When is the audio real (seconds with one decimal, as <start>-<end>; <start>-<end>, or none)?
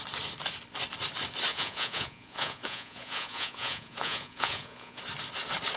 0.0-1.5; 5.0-5.8